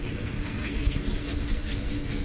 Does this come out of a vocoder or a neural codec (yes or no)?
yes